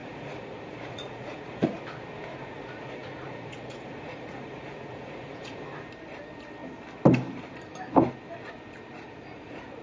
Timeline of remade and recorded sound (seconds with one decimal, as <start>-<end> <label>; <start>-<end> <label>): 0.0-1.8 remade; 1.8-2.3 recorded; 2.3-5.6 remade; 5.6-8.9 recorded; 8.9-9.8 remade

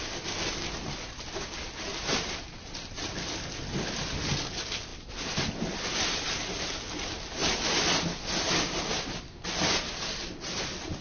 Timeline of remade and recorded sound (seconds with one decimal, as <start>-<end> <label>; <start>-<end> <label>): 0.0-11.0 recorded

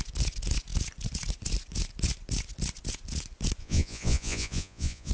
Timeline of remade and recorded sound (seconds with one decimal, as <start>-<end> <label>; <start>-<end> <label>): 0.0-3.6 recorded; 3.6-5.1 remade

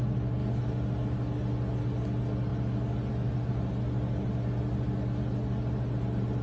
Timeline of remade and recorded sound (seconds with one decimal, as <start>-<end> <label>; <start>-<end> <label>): 0.0-6.4 recorded

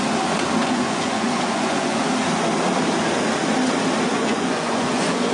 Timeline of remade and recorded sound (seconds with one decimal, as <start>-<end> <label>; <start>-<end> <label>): 0.0-0.6 recorded; 0.6-2.0 remade; 2.0-4.1 recorded; 4.1-5.3 remade

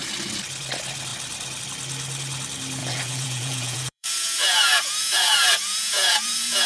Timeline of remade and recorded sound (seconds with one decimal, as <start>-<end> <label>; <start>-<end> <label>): 0.0-2.8 recorded; 2.8-6.7 remade

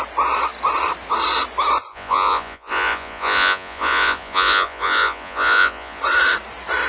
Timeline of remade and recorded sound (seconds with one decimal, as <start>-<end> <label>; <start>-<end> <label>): 0.0-1.9 recorded; 1.9-6.0 remade; 6.0-6.9 recorded